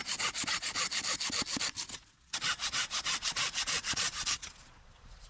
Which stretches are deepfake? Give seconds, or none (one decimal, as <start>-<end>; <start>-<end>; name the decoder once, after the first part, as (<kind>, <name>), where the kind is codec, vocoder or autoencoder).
1.9-5.3 (vocoder, Vocos)